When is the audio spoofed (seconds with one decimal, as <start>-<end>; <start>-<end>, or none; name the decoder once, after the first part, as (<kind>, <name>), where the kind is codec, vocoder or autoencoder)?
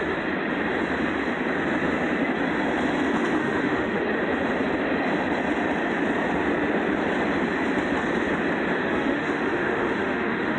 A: 3.4-4.0 (autoencoder, DAC-VAE); 8.8-10.6